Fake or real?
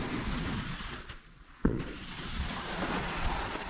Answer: fake